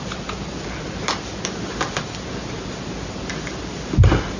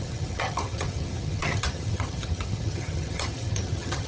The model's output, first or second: second